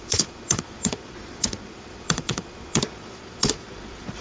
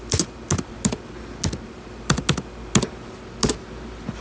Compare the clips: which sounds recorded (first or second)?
second